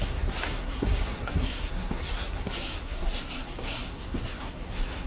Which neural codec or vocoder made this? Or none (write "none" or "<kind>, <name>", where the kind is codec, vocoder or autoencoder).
codec, SNAC